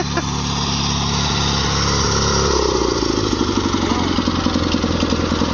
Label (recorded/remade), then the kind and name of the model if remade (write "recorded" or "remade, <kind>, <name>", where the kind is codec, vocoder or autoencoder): recorded